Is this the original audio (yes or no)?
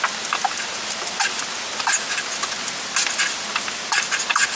yes